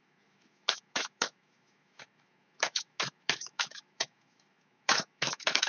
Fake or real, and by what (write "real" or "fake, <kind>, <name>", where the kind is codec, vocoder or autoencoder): fake, autoencoder, DAC-VAE